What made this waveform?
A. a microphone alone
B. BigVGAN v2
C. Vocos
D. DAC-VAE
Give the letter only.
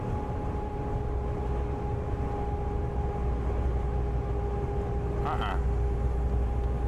A